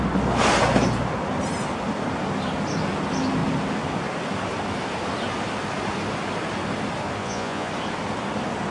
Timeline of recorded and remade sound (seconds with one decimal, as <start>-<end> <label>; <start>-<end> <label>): 0.0-7.2 recorded; 7.2-7.7 remade; 7.7-8.7 recorded